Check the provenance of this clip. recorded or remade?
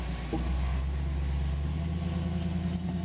recorded